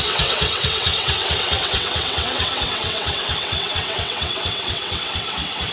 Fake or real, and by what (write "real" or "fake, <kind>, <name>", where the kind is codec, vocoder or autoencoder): fake, vocoder, WaveNeXt